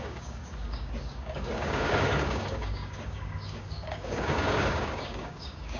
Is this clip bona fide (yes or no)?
no